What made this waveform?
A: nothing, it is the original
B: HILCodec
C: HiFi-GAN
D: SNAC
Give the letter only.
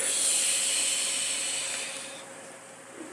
A